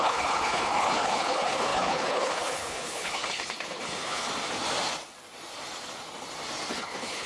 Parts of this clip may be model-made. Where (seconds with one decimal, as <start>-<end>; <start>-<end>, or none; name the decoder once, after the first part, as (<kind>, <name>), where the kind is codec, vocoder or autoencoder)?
0.0-4.3 (codec, HILCodec); 6.7-7.3